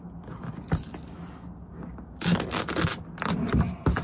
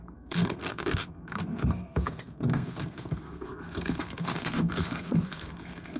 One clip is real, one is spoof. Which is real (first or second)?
first